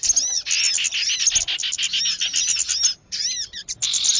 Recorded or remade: recorded